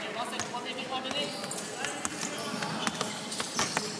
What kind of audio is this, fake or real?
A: real